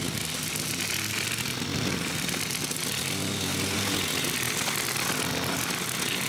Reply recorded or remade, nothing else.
recorded